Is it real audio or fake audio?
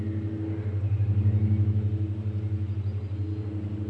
real